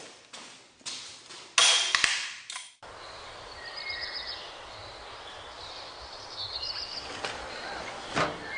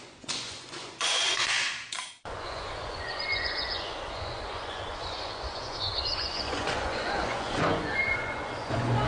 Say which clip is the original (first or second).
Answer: first